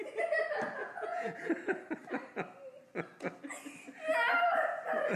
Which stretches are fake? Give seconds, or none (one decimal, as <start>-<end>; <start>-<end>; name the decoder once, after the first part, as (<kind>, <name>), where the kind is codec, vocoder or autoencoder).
0.8-1.5 (vocoder, Vocos)